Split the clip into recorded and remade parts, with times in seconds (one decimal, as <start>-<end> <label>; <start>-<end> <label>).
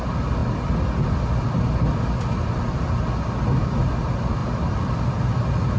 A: 0.0-5.8 recorded